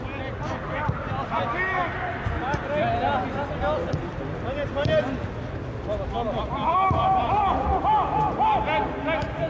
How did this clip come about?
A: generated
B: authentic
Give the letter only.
B